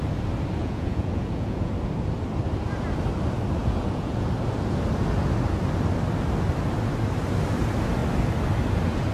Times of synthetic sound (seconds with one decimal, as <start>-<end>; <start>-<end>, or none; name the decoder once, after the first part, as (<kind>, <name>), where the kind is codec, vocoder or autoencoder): 0.6-1.7 (vocoder, Vocos); 3.6-4.3